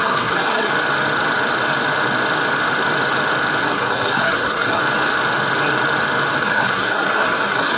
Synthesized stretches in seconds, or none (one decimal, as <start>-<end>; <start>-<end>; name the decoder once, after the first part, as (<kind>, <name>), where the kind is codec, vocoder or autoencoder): 0.0-0.7 (codec, SNAC); 3.6-4.8; 6.4-7.8